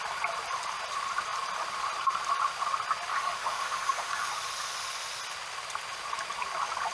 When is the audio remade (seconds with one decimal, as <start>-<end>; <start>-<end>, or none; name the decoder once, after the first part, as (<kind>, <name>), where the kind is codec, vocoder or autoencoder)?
3.1-4.3 (autoencoder, DAC-VAE)